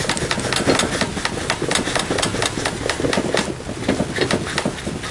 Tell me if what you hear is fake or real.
real